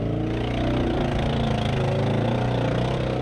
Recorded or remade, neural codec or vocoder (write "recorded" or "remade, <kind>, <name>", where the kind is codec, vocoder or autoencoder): recorded